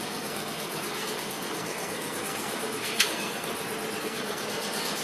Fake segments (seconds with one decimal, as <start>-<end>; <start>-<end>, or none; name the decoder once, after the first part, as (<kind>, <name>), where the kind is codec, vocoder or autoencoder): 0.0-3.5 (codec, SNAC); 4.0-5.0

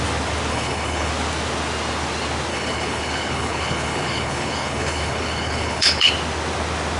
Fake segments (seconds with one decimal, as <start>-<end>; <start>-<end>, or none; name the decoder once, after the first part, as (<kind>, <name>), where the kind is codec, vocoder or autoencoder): 0.5-1.1 (codec, HILCodec); 2.5-6.1

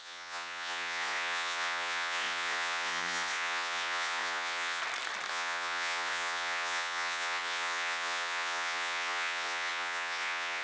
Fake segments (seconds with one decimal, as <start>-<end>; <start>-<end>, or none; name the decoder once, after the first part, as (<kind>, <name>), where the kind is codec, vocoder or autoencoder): 0.0-4.8 (vocoder, Vocos); 5.3-10.6